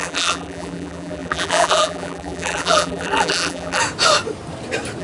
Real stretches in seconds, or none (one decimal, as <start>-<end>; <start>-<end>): 3.8-5.0